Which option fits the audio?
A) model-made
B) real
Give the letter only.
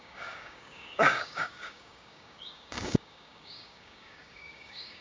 A